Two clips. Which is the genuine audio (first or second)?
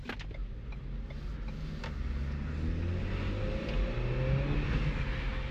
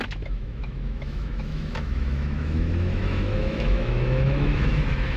first